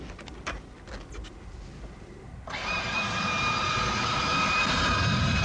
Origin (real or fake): real